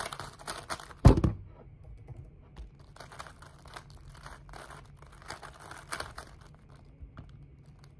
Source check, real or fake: real